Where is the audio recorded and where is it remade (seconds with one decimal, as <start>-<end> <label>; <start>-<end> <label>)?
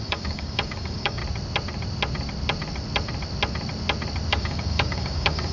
0.0-1.2 remade; 1.2-4.3 recorded; 4.3-5.5 remade